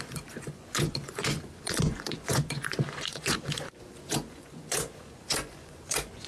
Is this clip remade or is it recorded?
remade